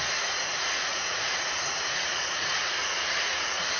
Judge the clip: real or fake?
fake